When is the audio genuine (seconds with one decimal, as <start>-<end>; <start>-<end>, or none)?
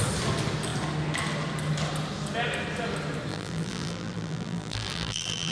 0.0-3.3